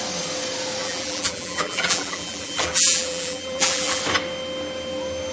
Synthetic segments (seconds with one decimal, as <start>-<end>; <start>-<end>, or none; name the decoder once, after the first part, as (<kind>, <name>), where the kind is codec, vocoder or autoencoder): 0.8-4.0 (vocoder, BigVGAN v2)